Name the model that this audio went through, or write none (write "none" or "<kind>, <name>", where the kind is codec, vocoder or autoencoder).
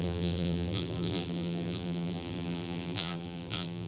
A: vocoder, BigVGAN v2